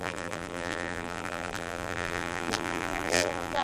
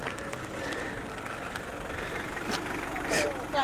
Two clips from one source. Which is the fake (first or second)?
first